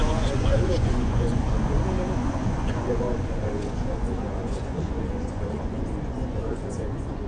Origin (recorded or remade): remade